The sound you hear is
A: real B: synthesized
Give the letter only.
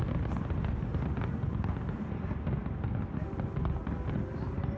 A